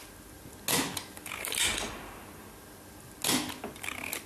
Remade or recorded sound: recorded